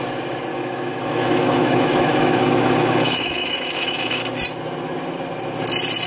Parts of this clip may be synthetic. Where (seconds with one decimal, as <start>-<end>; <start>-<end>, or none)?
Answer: 0.5-4.2